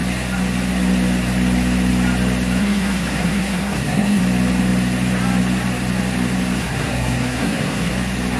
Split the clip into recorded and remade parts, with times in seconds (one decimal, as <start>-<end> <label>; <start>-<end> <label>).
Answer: 0.0-2.6 recorded; 2.6-4.2 remade; 4.2-6.6 recorded; 6.6-7.9 remade; 7.9-8.4 recorded